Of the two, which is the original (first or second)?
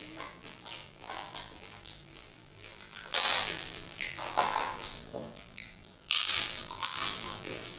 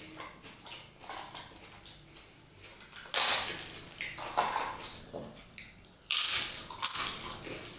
second